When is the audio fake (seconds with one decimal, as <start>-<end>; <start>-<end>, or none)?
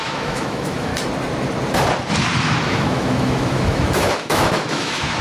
0.0-0.9; 2.4-5.2